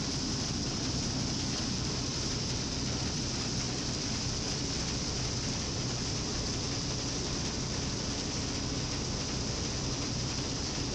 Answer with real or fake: fake